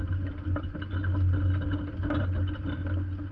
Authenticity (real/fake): real